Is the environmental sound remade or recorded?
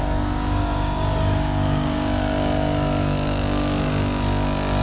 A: remade